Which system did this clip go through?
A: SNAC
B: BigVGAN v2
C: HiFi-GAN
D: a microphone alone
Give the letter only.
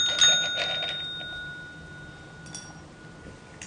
D